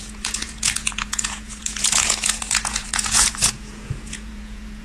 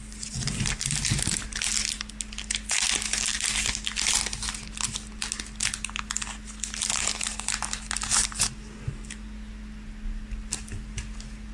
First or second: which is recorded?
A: second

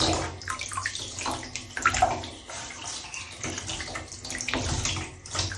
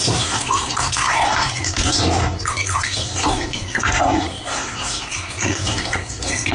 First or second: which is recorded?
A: first